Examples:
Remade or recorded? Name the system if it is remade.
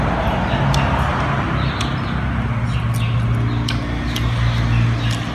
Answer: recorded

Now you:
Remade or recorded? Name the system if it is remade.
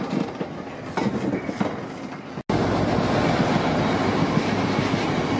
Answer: recorded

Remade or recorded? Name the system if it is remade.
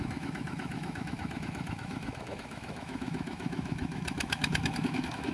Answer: remade, autoencoder, DAC-VAE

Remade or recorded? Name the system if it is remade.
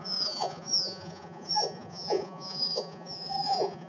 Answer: remade, vocoder, Vocos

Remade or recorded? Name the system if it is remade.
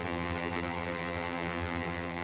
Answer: remade, vocoder, BigVGAN v2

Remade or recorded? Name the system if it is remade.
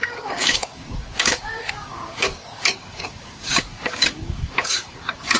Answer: remade, codec, DAC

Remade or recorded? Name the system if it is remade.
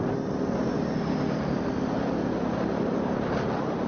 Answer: recorded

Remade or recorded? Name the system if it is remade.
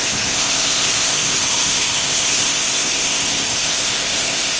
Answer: remade, codec, ZipCodec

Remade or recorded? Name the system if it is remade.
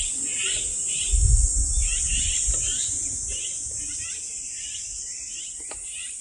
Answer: recorded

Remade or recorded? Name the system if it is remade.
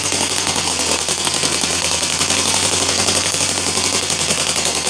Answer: remade, codec, SNAC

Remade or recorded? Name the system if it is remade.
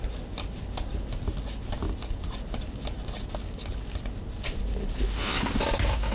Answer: recorded